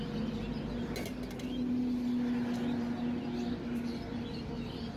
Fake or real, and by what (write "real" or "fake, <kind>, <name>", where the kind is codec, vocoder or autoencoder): real